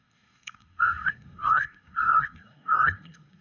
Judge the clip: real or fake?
fake